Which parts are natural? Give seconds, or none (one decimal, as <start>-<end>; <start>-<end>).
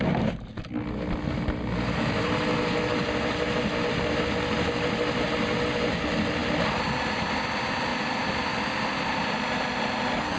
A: 0.0-10.4